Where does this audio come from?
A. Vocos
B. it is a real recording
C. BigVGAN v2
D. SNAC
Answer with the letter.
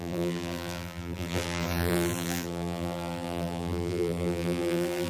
C